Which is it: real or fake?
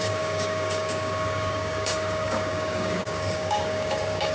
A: fake